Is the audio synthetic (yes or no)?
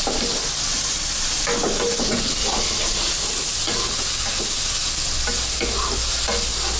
no